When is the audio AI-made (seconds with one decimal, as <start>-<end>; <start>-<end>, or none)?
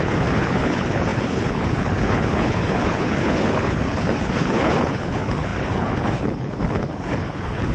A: 0.0-7.7